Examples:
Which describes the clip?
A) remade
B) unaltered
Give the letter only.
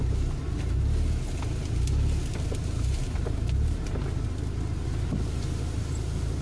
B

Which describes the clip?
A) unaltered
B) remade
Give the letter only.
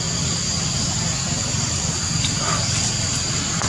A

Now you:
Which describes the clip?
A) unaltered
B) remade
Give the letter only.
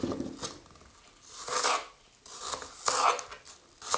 A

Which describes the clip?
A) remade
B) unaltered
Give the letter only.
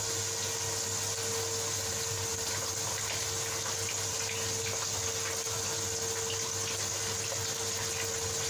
B